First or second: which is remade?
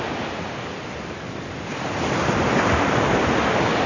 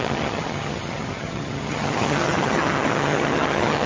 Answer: second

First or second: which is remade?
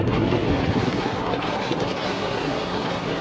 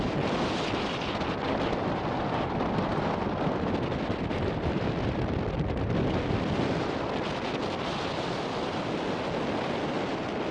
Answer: first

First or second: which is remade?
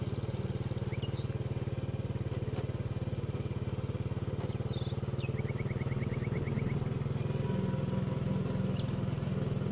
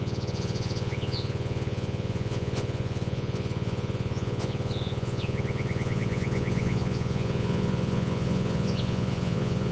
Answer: second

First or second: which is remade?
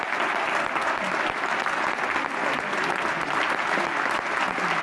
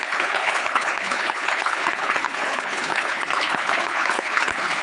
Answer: second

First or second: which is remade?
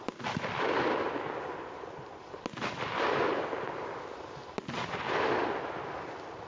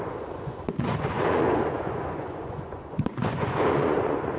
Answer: second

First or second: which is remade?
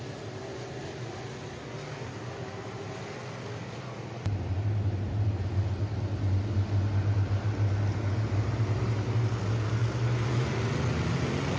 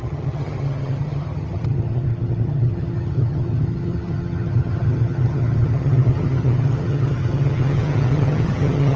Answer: second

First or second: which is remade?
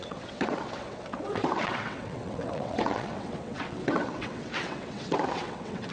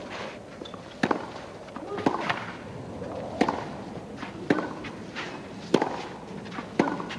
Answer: first